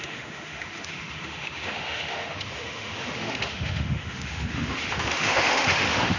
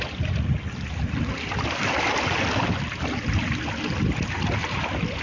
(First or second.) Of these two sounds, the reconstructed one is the first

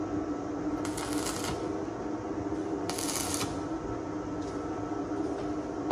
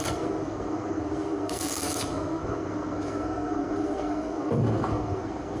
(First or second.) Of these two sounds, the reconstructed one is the second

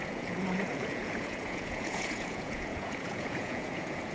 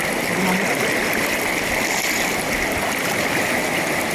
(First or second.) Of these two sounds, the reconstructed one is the first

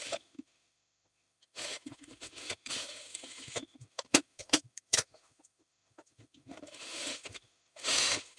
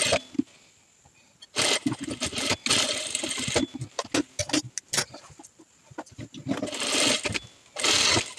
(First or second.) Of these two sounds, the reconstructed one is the first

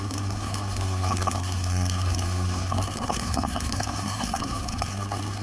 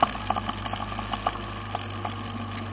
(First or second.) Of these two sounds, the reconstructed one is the first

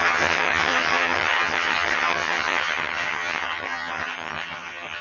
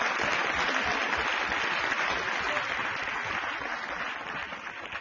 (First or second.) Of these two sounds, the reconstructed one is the first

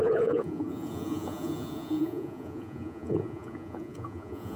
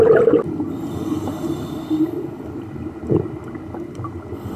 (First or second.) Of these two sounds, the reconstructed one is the first